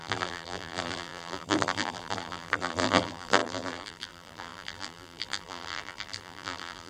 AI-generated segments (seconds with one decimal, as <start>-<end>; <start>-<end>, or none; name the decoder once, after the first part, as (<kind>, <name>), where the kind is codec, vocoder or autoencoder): 0.0-6.9 (vocoder, BigVGAN v2)